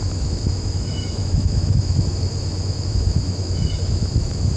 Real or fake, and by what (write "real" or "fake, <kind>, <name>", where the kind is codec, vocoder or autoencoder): fake, autoencoder, DAC-VAE